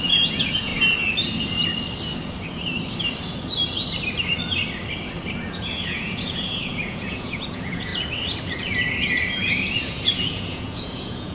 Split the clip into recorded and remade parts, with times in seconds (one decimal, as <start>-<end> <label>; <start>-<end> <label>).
0.0-0.7 remade; 0.7-5.5 recorded; 5.5-7.9 remade; 7.9-9.7 recorded; 9.7-11.3 remade